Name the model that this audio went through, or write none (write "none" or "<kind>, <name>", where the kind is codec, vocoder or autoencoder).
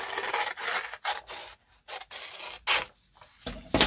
none